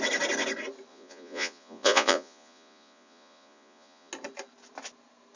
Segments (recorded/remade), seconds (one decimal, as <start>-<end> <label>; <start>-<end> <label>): 0.0-0.9 recorded; 0.9-4.1 remade; 4.1-5.4 recorded